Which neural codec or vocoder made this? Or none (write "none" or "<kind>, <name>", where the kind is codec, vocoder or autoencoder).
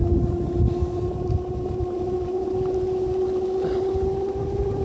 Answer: none